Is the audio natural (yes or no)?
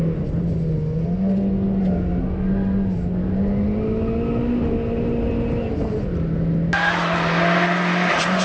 yes